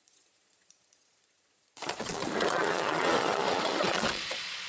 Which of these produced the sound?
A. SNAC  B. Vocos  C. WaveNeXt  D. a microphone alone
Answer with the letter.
B